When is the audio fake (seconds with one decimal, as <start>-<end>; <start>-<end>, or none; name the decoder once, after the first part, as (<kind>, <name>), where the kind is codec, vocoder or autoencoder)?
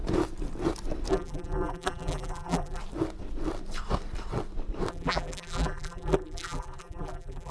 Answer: 1.1-2.8 (vocoder, BigVGAN v2); 4.9-7.5